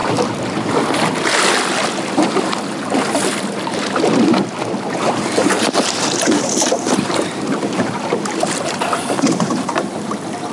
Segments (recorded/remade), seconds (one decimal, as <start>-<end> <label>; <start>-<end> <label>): 0.0-5.4 recorded; 5.4-9.8 remade; 9.8-10.5 recorded